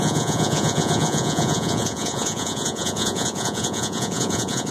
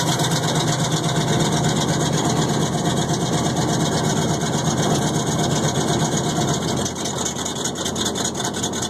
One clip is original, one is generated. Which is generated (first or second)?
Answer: first